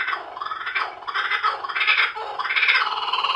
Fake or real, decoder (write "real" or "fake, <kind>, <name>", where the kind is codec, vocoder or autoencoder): real